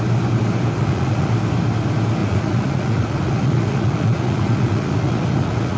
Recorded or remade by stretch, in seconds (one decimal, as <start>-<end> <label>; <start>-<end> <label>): 0.0-0.8 recorded; 0.8-1.3 remade; 1.3-2.2 recorded; 2.2-5.8 remade